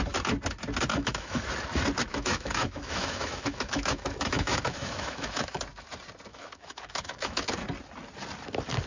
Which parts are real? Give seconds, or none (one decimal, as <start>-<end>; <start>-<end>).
0.0-0.9; 1.4-2.1; 5.6-6.3; 7.5-8.9